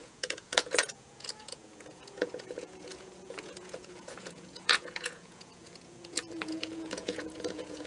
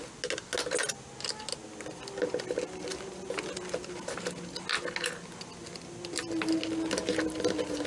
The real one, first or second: second